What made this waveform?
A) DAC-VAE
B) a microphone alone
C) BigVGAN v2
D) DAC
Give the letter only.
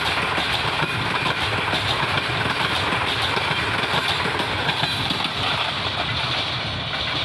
B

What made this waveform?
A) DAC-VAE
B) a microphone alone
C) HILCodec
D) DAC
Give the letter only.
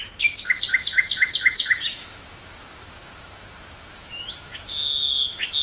A